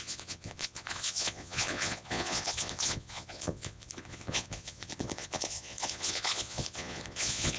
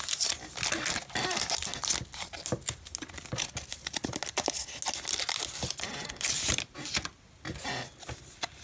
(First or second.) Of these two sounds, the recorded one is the second